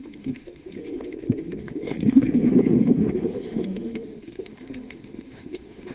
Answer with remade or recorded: remade